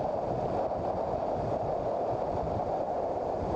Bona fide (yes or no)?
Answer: yes